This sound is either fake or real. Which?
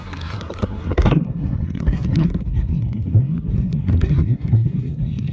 fake